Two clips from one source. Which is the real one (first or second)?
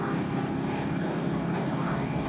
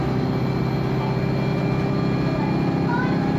second